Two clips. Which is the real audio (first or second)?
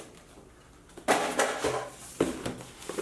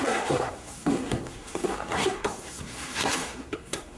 first